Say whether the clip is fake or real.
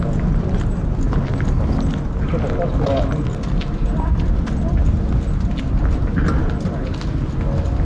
real